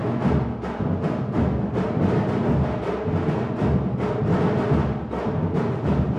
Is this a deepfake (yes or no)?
no